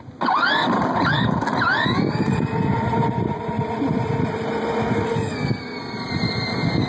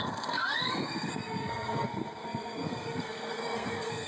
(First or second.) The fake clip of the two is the second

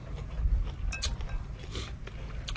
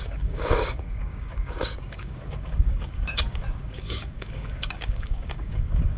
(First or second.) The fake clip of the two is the second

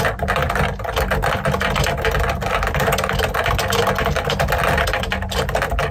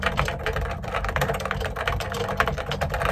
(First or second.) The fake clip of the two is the second